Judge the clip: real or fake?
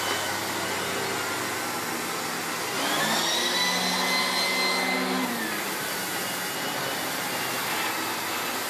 real